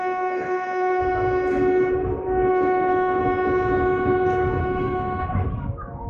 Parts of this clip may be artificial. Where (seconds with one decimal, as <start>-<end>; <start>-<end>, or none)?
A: 0.0-1.0; 2.5-3.2; 4.6-5.2